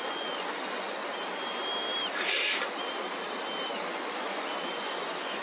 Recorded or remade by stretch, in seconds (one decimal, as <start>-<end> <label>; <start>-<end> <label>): 0.0-1.0 remade; 1.0-3.9 recorded; 3.9-5.4 remade